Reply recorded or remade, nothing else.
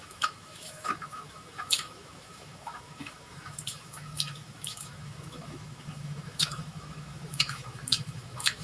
remade